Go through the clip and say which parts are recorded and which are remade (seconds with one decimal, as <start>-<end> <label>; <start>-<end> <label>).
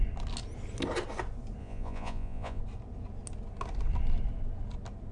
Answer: 0.0-1.6 recorded; 1.6-2.6 remade; 2.6-5.1 recorded